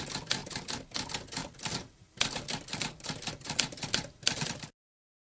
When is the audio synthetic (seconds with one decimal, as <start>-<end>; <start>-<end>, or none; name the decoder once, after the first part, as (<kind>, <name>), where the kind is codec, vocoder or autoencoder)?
0.4-0.9 (vocoder, BigVGAN v2); 1.4-4.6